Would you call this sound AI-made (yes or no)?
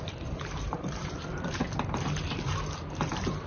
no